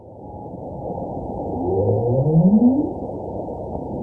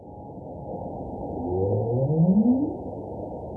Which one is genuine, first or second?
second